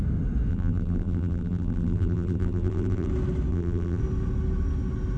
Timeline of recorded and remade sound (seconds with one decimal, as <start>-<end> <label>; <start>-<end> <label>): 0.0-0.5 recorded; 0.5-3.1 remade; 3.1-3.5 recorded; 3.5-4.0 remade; 4.0-5.2 recorded